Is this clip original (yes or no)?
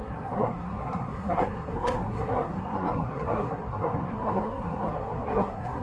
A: no